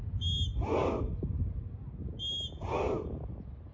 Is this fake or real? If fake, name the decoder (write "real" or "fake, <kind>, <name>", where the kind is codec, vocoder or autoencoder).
real